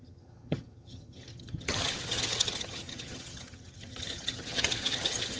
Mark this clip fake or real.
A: fake